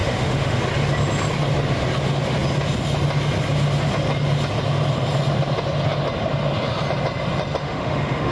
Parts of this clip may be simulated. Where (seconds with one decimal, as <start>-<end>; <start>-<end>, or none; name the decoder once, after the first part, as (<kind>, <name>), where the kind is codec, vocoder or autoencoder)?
0.0-0.6 (autoencoder, DAC-VAE); 7.6-8.3